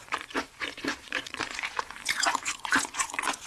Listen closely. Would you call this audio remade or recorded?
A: remade